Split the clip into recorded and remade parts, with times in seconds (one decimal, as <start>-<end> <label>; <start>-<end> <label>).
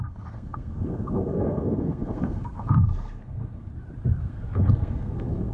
0.0-3.7 remade; 3.7-4.2 recorded; 4.2-5.5 remade